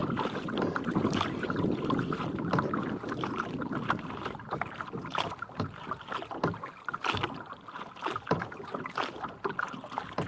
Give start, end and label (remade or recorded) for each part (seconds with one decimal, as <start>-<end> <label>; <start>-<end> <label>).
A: 0.0-1.0 remade; 1.0-10.3 recorded